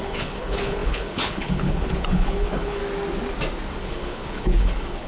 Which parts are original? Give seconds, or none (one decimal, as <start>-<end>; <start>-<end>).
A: 2.8-3.8